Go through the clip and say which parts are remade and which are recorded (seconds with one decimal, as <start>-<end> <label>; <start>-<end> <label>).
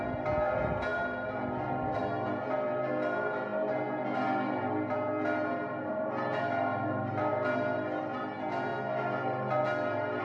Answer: 0.0-10.2 recorded